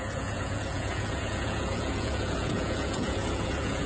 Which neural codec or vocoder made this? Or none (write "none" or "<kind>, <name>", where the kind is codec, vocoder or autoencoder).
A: vocoder, Vocos